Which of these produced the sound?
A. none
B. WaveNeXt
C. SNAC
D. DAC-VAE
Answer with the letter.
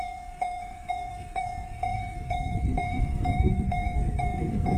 C